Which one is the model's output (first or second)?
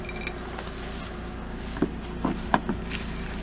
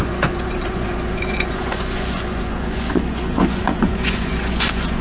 second